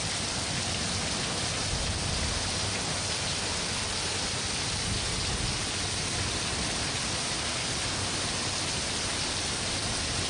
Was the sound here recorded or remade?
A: recorded